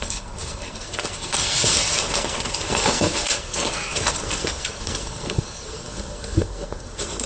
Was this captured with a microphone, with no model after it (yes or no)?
no